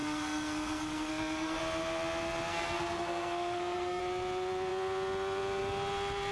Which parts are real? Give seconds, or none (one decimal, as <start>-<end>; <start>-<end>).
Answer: 1.6-2.5; 4.0-6.3